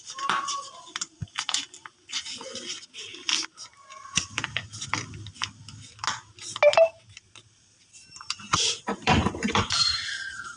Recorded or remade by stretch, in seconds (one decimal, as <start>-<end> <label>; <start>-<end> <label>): 0.0-1.2 remade; 1.2-4.0 recorded; 4.0-4.6 remade; 4.6-6.7 recorded; 6.7-10.6 remade